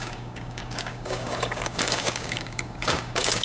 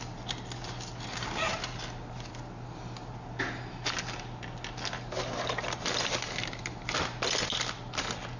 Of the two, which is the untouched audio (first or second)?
second